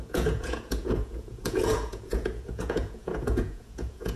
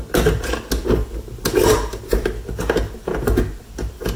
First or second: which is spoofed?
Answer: first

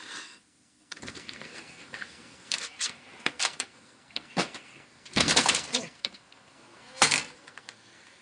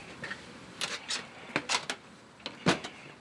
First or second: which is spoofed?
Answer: first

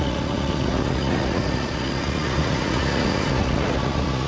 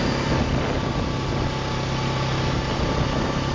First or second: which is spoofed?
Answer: first